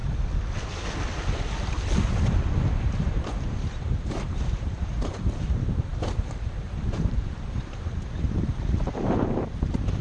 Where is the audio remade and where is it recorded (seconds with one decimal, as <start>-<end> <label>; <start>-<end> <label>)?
0.0-2.8 recorded; 2.8-10.0 remade

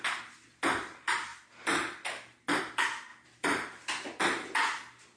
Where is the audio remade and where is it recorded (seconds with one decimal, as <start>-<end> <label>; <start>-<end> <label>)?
0.0-3.1 recorded; 3.1-4.2 remade; 4.2-5.2 recorded